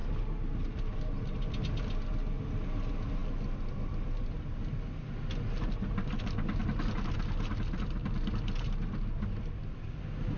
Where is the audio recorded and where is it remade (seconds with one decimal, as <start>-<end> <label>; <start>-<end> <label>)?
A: 0.0-10.4 recorded